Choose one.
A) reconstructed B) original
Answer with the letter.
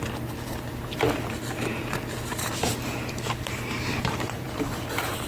A